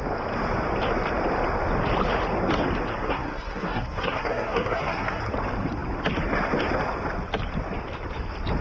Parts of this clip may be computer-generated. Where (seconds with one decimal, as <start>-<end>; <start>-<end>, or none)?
3.0-5.2